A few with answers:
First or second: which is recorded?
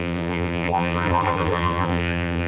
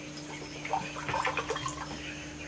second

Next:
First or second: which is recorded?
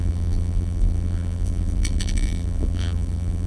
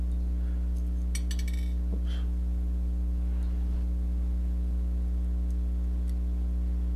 second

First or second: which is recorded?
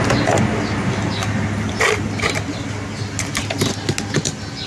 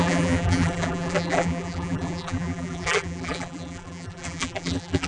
first